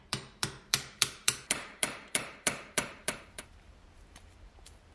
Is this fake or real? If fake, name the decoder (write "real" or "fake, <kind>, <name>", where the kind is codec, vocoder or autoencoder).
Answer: fake, vocoder, BigVGAN v2